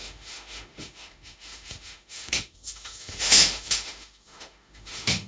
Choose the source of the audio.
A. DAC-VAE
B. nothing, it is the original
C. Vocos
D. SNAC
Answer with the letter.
A